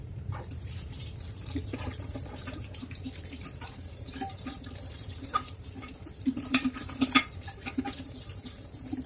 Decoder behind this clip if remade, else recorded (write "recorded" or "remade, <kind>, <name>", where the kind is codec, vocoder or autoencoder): remade, vocoder, BigVGAN v2